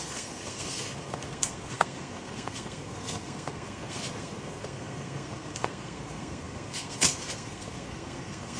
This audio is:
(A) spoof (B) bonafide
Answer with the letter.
A